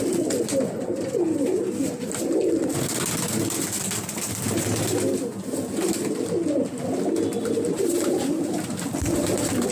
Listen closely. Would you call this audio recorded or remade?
recorded